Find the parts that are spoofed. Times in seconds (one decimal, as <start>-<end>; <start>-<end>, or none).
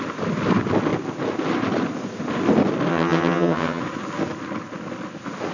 2.9-3.8